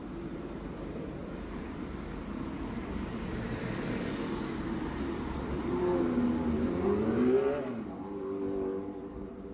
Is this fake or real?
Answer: real